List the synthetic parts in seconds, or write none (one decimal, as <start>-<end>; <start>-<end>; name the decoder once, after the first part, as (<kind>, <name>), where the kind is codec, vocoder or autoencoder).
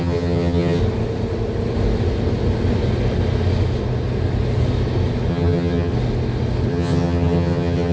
0.0-0.8 (vocoder, HiFi-GAN); 5.3-5.9; 6.7-7.9